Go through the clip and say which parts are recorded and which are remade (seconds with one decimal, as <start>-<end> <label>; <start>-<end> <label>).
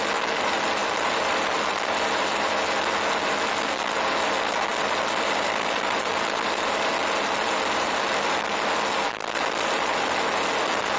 0.0-0.8 recorded; 0.8-2.5 remade; 2.5-4.7 recorded; 4.7-6.1 remade; 6.1-7.0 recorded; 7.0-8.2 remade; 8.2-11.0 recorded